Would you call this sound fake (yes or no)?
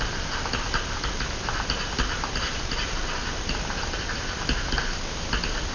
no